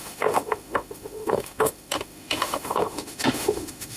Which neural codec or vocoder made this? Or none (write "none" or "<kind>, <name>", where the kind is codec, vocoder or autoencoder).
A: autoencoder, DAC-VAE